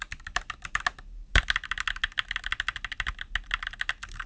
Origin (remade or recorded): recorded